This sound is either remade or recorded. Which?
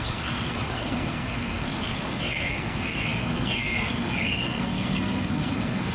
remade